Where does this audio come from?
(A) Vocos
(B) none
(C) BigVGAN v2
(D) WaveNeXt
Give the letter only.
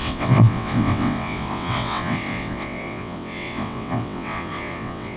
D